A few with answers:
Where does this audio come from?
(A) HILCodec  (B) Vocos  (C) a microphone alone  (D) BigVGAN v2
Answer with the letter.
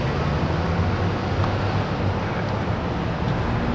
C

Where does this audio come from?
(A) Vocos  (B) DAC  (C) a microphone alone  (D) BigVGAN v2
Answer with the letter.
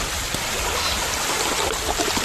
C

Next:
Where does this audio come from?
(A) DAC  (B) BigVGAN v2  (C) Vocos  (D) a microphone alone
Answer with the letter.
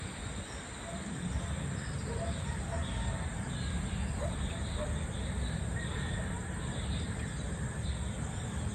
D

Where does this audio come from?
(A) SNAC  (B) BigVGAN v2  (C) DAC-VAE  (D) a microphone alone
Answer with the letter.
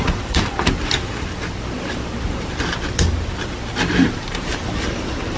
B